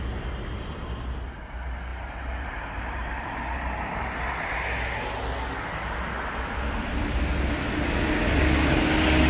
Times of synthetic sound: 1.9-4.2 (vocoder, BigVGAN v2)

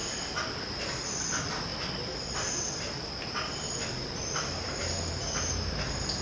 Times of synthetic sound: 0.0-6.2 (vocoder, BigVGAN v2)

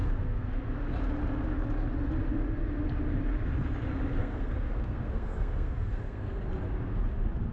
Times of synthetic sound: 0.0-0.5 (codec, SNAC); 4.2-6.4

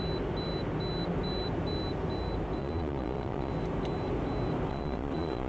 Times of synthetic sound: 2.6-3.5 (vocoder, Vocos); 4.7-5.5